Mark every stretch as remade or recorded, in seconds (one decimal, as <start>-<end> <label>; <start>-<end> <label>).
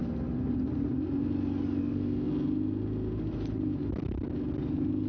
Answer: 0.0-1.8 recorded; 1.8-2.3 remade; 2.3-5.1 recorded